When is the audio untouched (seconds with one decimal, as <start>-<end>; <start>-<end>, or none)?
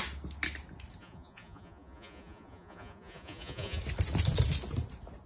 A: 0.0-1.0; 3.8-5.3